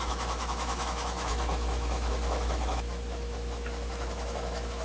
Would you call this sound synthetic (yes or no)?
yes